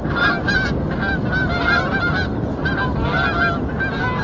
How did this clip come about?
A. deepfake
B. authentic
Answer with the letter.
B